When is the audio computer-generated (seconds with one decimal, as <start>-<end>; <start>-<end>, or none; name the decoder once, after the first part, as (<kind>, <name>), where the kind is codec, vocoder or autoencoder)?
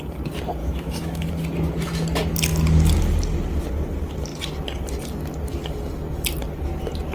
0.6-1.3 (autoencoder, DAC-VAE)